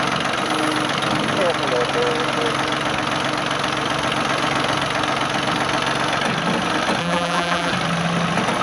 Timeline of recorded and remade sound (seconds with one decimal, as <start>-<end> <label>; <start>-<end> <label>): 0.0-7.0 recorded; 7.0-7.7 remade; 7.7-8.6 recorded